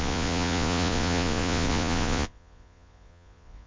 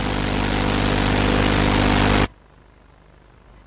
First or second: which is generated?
first